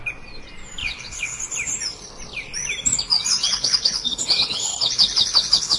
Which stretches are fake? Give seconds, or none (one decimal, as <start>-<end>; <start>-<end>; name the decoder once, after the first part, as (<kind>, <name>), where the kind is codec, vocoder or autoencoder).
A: 0.8-1.4 (codec, HILCodec); 3.3-5.8